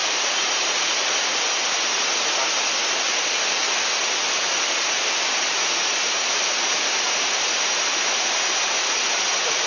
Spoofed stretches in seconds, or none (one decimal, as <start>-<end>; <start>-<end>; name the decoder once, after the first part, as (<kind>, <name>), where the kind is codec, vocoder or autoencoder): 0.0-1.0 (vocoder, BigVGAN v2); 5.8-9.7